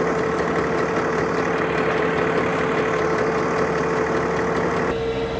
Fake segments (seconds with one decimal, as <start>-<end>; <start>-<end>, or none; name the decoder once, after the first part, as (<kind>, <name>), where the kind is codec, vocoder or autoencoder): none